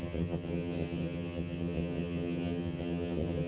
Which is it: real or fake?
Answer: fake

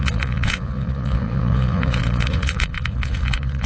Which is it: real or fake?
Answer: fake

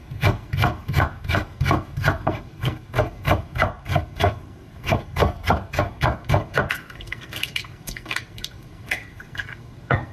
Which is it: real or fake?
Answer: fake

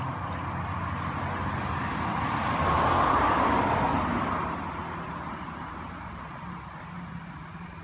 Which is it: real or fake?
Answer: real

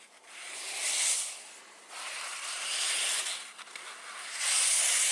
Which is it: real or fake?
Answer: real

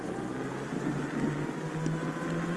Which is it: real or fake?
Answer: real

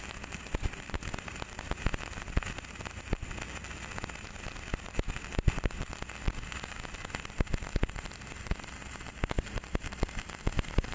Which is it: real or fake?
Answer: real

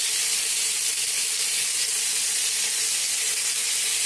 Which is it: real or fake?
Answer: real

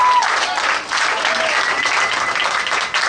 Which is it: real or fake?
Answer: real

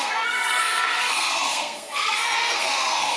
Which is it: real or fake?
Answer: fake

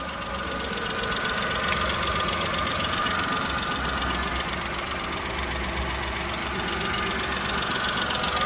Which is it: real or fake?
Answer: real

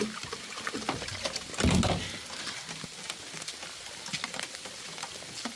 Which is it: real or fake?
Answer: real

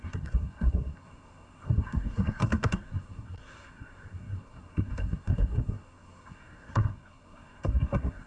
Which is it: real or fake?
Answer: fake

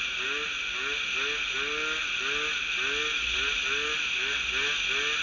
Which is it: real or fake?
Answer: real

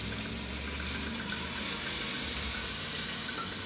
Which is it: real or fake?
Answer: real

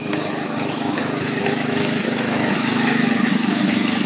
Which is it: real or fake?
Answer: fake